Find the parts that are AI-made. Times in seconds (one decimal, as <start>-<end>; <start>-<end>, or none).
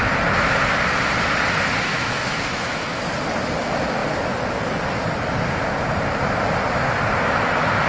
1.9-3.1